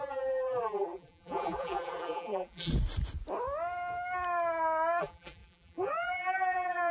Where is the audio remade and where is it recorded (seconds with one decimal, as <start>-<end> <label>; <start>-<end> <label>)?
0.0-2.7 remade; 2.7-5.0 recorded; 5.0-6.9 remade